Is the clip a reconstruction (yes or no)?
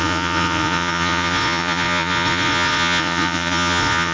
yes